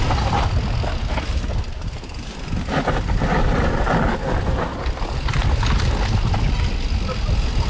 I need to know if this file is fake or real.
real